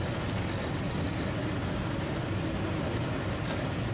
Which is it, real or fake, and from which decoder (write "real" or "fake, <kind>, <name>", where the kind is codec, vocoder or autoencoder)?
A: real